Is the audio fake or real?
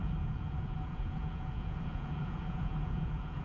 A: fake